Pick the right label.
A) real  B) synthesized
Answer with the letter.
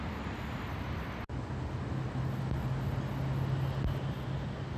A